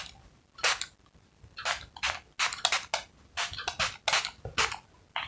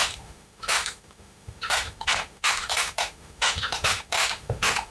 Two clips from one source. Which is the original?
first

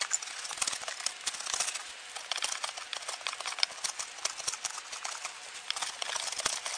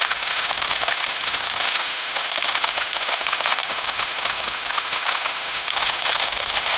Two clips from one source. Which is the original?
first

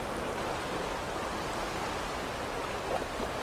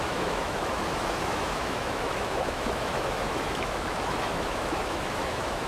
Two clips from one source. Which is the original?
first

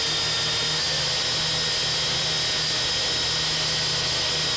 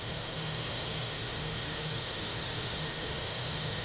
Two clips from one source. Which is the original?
first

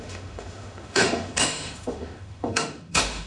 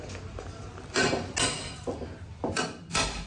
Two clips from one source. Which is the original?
second